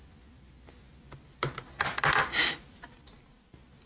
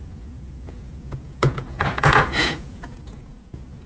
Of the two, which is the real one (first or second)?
first